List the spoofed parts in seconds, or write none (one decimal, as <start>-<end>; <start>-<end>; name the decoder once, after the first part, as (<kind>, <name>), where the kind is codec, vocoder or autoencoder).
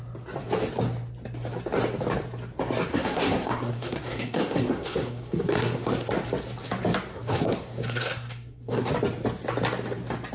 2.9-6.1 (codec, SNAC); 7.1-8.9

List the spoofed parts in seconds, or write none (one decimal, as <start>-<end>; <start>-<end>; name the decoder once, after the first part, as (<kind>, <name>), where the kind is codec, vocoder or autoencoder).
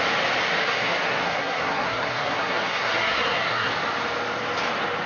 0.6-3.7 (codec, SNAC)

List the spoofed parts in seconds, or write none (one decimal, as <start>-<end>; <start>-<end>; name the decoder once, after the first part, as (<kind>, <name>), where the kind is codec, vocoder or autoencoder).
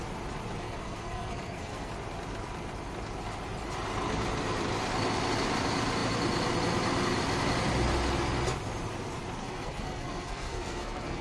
0.6-1.9 (codec, SNAC); 9.4-11.2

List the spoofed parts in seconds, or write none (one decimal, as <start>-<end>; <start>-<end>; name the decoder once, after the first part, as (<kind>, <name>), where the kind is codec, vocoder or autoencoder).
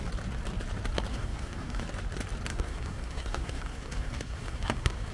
1.1-1.8 (codec, SNAC); 2.5-5.1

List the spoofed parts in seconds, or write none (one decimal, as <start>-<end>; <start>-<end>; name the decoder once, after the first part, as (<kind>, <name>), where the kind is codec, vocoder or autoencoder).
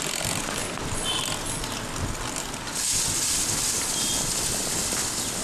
none